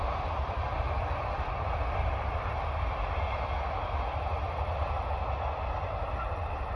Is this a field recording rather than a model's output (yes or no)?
yes